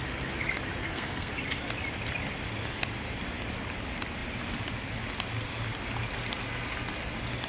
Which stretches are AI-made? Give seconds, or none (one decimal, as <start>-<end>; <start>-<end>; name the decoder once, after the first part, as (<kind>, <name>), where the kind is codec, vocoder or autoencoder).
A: 0.8-1.3 (codec, SNAC)

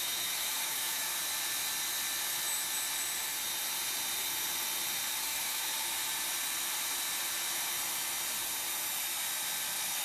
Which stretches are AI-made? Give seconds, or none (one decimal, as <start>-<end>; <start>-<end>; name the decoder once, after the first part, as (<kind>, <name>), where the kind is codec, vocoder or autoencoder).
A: 0.0-1.1 (autoencoder, DAC-VAE); 5.2-5.7

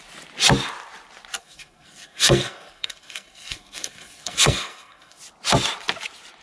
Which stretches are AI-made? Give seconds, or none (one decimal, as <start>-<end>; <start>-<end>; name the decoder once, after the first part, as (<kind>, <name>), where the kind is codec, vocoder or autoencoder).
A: 1.4-5.2 (codec, SNAC)

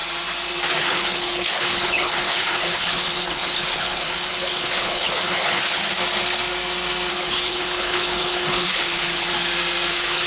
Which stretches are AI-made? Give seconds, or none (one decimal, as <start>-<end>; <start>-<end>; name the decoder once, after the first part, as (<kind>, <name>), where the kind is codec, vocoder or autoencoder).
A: 0.8-5.8 (codec, HILCodec); 7.1-9.3; 9.9-10.3

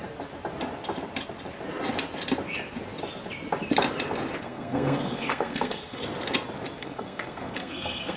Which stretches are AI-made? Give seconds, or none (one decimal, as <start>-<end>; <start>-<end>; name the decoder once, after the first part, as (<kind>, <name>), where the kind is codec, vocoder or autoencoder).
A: 4.4-6.0 (codec, SNAC); 6.8-8.2

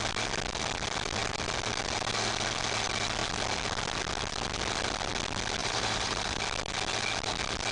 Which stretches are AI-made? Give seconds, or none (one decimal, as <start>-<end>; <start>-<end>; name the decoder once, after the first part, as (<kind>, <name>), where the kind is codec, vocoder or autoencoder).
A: 5.6-6.4 (vocoder, BigVGAN v2)

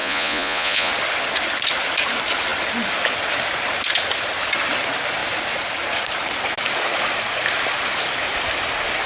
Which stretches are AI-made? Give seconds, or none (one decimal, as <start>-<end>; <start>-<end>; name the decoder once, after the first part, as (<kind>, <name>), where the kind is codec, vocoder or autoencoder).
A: 0.0-0.9 (vocoder, Vocos)